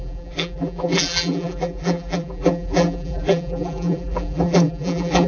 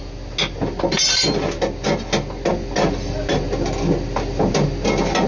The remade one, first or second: first